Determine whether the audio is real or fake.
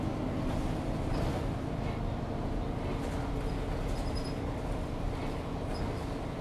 real